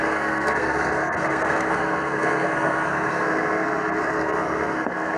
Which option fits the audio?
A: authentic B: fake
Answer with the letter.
B